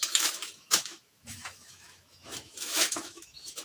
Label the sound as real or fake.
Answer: fake